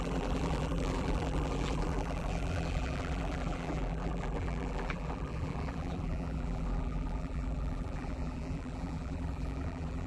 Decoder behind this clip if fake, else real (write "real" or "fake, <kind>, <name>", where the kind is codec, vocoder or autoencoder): fake, vocoder, BigVGAN v2